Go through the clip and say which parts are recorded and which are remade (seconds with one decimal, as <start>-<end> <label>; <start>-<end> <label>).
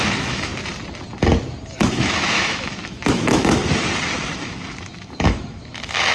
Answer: 0.0-0.5 remade; 0.5-1.9 recorded; 1.9-3.6 remade; 3.6-4.4 recorded; 4.4-6.1 remade